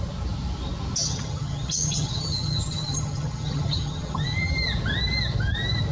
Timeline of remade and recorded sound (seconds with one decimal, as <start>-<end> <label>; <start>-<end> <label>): 0.0-1.0 recorded; 1.0-4.5 remade; 4.5-5.9 recorded